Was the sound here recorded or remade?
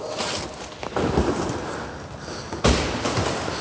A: recorded